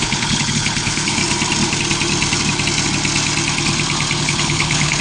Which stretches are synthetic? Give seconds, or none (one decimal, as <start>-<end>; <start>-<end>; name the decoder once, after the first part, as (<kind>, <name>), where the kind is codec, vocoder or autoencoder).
0.0-1.2 (codec, HILCodec); 4.2-5.0